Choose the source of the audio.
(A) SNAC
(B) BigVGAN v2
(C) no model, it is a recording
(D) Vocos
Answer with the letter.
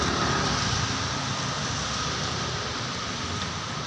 B